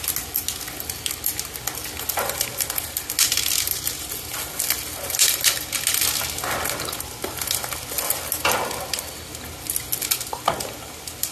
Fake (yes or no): no